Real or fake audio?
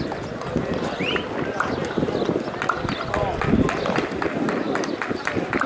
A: real